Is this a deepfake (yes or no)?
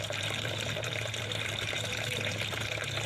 yes